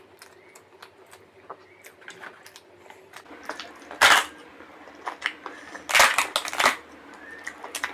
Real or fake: real